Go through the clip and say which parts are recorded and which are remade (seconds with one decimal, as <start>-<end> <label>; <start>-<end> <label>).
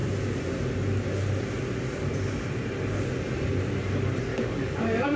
0.0-4.3 recorded; 4.3-5.2 remade